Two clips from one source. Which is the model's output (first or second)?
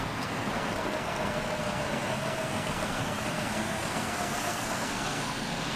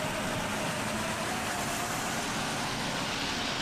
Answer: first